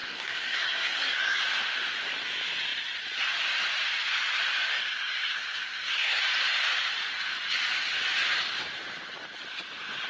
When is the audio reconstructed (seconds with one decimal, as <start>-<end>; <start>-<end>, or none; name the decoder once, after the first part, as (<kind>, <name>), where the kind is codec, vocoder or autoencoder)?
0.0-1.4 (codec, SNAC); 4.7-6.2